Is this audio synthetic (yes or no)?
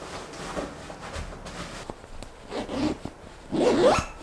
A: no